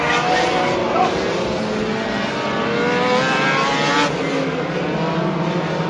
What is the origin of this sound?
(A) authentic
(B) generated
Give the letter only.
A